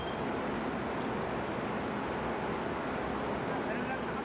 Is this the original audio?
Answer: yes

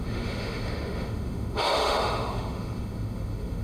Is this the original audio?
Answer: no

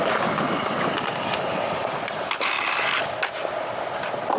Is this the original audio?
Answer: yes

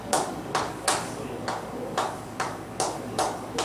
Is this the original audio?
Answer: no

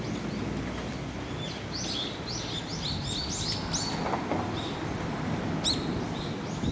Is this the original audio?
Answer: yes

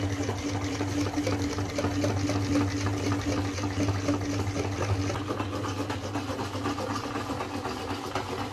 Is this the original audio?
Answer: yes